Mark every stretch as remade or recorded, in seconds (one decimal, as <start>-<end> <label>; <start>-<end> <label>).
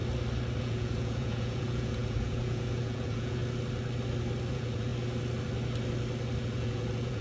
0.0-0.6 recorded; 0.6-3.4 remade; 3.4-4.5 recorded; 4.5-4.9 remade; 4.9-6.4 recorded; 6.4-7.2 remade